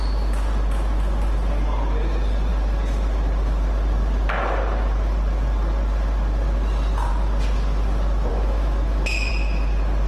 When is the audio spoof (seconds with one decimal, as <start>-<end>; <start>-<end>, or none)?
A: 8.3-9.3